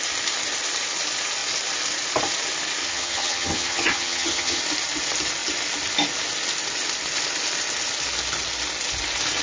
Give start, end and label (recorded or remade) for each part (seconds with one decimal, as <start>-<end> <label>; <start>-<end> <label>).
0.0-2.8 recorded; 2.8-4.6 remade; 4.6-9.4 recorded